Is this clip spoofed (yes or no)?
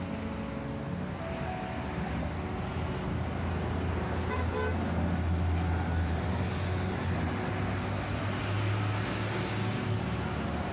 no